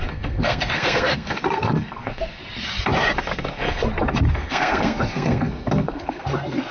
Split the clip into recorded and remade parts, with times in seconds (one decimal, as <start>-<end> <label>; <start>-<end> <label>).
0.0-2.4 remade; 2.4-3.2 recorded; 3.2-3.8 remade; 3.8-4.3 recorded; 4.3-6.7 remade